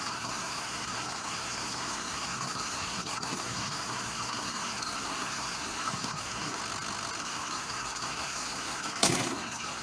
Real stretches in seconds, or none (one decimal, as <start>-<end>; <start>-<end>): 6.6-7.2